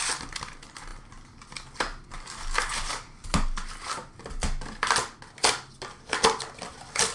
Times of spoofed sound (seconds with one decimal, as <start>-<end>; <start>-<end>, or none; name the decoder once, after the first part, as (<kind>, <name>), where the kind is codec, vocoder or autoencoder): none